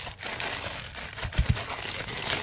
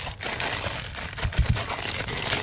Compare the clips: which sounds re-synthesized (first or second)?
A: second